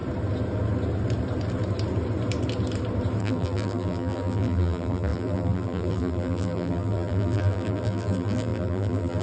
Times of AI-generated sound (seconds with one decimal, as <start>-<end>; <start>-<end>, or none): 3.2-9.2